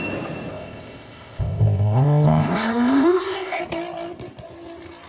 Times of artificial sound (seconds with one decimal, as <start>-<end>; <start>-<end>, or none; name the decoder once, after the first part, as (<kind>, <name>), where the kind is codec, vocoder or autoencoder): 0.5-3.6 (codec, ZipCodec)